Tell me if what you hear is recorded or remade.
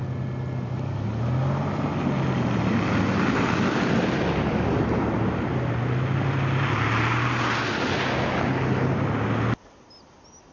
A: recorded